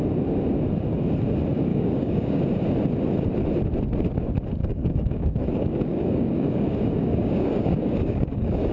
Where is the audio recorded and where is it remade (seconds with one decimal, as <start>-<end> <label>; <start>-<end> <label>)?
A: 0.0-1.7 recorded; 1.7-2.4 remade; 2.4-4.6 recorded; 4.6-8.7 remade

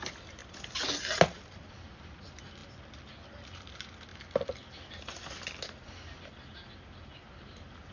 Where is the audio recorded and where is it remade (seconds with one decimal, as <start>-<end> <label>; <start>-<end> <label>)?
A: 0.0-7.9 recorded

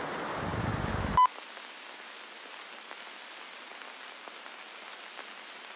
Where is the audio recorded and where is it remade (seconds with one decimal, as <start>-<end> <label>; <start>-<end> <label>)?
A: 0.0-5.8 recorded

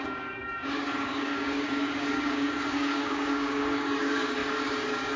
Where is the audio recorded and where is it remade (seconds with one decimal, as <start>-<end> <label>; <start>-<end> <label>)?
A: 0.0-5.2 remade